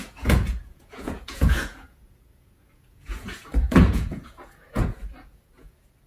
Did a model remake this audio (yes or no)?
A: yes